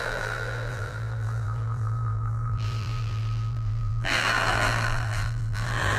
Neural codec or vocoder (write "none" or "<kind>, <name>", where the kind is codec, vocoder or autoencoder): vocoder, BigVGAN v2